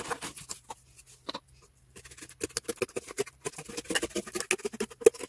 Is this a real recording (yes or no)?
yes